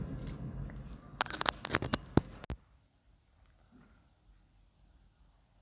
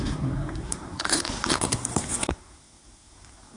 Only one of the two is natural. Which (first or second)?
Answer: first